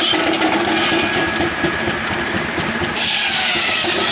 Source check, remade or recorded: recorded